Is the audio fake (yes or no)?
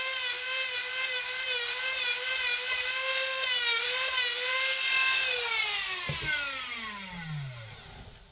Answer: no